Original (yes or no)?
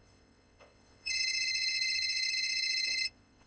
no